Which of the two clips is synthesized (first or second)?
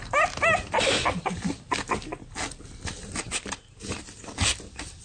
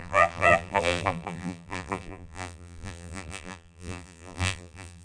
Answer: second